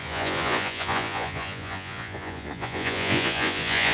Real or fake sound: fake